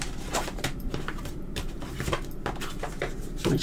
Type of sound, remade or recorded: remade